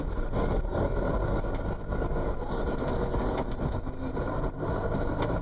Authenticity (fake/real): real